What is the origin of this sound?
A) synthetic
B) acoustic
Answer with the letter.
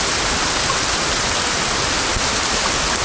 B